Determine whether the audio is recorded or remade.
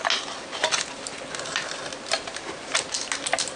recorded